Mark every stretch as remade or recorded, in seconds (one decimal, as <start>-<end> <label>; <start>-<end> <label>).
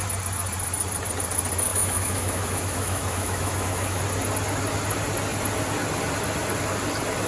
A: 0.0-1.7 recorded; 1.7-4.0 remade; 4.0-7.3 recorded